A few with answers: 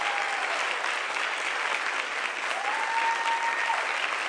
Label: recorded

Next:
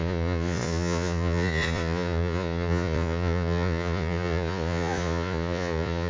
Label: remade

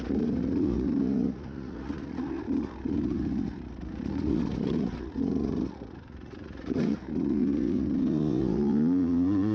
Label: remade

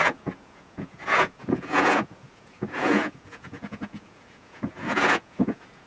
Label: remade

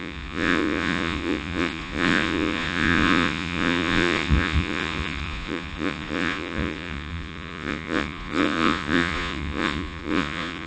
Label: remade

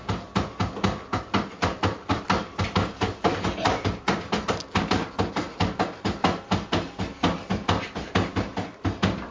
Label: recorded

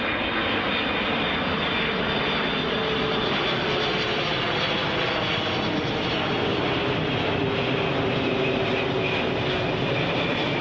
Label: recorded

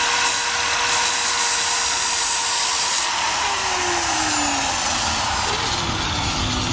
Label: recorded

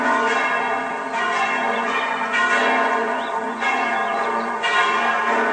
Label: remade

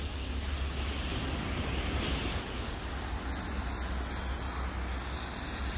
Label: recorded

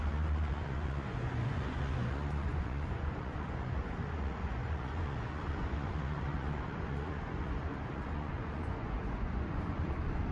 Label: remade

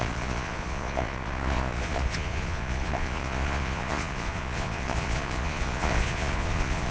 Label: remade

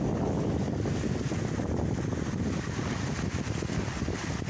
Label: recorded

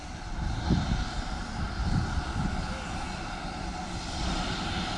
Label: recorded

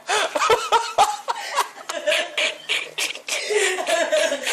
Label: recorded